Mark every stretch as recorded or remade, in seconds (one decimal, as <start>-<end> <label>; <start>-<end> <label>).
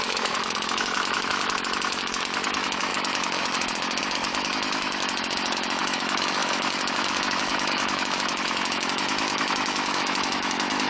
0.0-10.9 remade